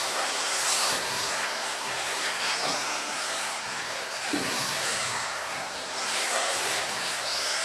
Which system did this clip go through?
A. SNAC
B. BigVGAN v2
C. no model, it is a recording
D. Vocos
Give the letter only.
A